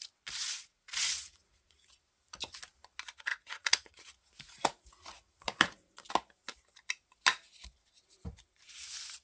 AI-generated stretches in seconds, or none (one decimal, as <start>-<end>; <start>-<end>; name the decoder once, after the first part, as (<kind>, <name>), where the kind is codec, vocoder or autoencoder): 0.4-1.9 (vocoder, Vocos); 3.3-6.1